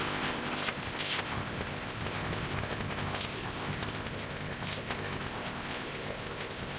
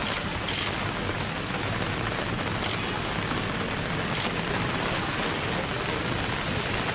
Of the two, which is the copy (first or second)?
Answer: first